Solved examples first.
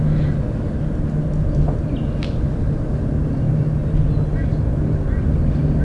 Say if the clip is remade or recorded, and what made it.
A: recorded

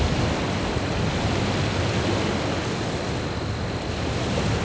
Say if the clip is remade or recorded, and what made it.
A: recorded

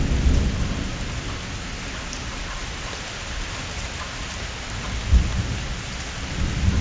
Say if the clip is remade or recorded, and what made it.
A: recorded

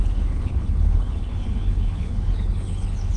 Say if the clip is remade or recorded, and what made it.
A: remade, codec, HILCodec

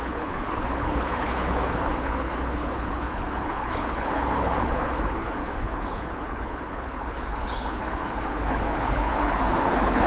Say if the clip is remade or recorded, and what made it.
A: remade, codec, HILCodec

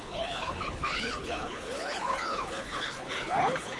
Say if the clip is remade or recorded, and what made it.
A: remade, codec, HILCodec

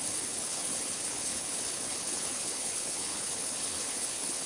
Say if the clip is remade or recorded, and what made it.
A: remade, codec, HILCodec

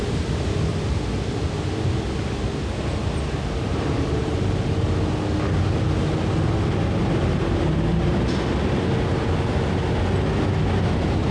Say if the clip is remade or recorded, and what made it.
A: recorded